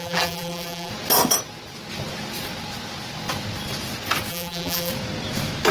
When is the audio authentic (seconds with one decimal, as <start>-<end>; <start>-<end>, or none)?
0.9-4.3; 4.9-5.7